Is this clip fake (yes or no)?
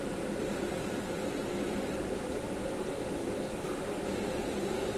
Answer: yes